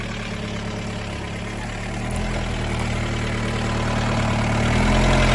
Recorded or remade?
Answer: recorded